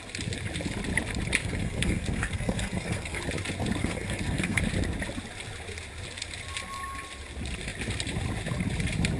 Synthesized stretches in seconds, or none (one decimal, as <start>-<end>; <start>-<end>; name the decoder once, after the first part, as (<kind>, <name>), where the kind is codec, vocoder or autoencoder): 1.4-3.2 (codec, SNAC); 3.8-4.6